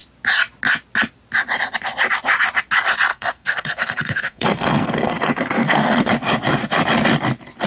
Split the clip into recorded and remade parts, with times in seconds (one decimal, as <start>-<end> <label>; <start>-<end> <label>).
0.0-3.1 recorded; 3.1-6.1 remade; 6.1-7.7 recorded